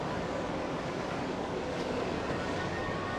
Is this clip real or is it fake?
fake